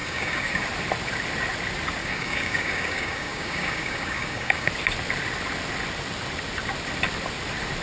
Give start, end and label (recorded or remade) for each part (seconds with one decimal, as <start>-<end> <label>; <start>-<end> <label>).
0.0-0.6 remade; 0.6-2.0 recorded; 2.0-4.7 remade; 4.7-7.8 recorded

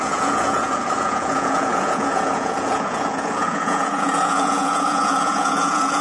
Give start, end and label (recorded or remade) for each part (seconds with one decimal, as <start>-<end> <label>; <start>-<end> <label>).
0.0-6.0 remade

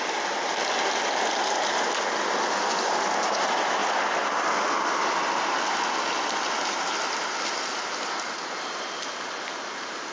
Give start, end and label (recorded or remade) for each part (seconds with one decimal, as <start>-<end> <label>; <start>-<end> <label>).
0.0-10.1 recorded

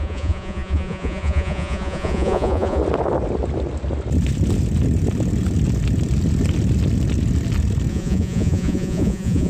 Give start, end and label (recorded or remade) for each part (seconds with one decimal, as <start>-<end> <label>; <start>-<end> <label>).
0.0-2.8 remade; 2.8-7.9 recorded; 7.9-9.5 remade

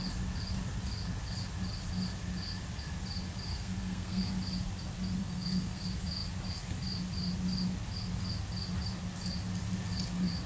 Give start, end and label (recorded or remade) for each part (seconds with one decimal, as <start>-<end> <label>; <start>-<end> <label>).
0.0-3.5 recorded; 3.5-4.3 remade; 4.3-5.2 recorded; 5.2-5.8 remade; 5.8-10.5 recorded

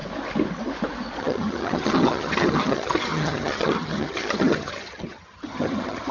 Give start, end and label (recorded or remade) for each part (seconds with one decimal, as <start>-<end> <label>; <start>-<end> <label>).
0.0-1.2 recorded; 1.2-6.1 remade

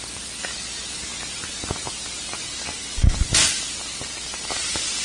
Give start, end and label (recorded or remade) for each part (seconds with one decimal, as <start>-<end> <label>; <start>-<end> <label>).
0.0-5.0 recorded